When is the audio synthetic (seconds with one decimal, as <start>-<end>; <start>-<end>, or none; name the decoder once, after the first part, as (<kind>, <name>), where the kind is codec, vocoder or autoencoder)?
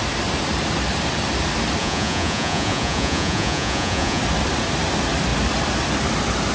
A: 1.8-4.2 (vocoder, Vocos)